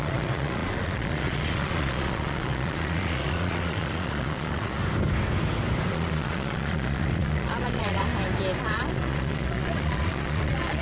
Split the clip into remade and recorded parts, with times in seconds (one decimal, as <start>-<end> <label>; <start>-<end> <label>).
0.0-4.8 remade; 4.8-5.9 recorded; 5.9-8.1 remade; 8.1-8.6 recorded; 8.6-10.8 remade